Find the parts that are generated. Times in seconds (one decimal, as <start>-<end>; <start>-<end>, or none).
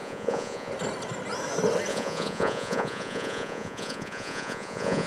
0.0-0.7; 1.9-5.1